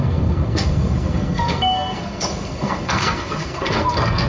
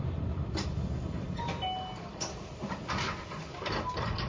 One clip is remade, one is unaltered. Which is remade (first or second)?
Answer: first